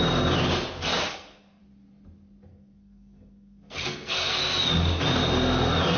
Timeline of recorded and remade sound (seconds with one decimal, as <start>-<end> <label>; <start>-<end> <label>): 0.0-1.1 recorded; 1.1-1.6 remade; 1.6-2.5 recorded; 2.5-4.4 remade; 4.4-6.0 recorded